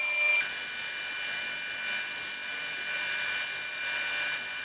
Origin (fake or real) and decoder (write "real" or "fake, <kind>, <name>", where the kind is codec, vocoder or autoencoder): real